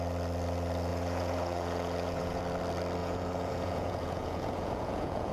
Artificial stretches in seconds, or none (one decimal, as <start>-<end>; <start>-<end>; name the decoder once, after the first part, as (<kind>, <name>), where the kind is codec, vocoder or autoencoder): 0.9-2.4 (vocoder, Vocos); 3.0-5.3